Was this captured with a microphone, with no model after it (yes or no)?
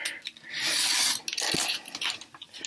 yes